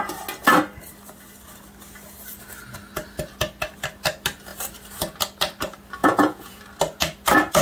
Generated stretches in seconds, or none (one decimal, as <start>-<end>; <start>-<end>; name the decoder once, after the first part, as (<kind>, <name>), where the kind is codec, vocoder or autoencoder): 6.0-6.6 (vocoder, Vocos)